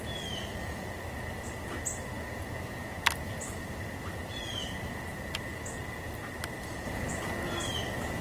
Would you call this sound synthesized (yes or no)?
no